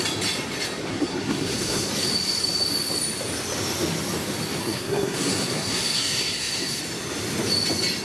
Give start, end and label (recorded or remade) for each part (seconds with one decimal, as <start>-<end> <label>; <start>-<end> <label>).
0.0-0.9 recorded; 0.9-1.9 remade; 1.9-4.6 recorded; 4.6-6.8 remade; 6.8-8.0 recorded